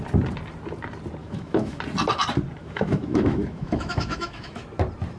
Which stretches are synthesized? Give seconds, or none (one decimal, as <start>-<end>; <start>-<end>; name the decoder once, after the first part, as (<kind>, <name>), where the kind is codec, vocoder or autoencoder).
1.2-1.8 (autoencoder, DAC-VAE); 2.6-4.6